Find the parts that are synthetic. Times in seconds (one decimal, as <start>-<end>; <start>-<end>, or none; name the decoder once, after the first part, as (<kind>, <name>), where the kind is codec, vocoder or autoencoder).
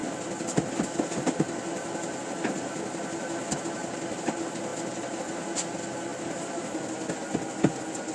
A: 6.1-6.6 (vocoder, BigVGAN v2)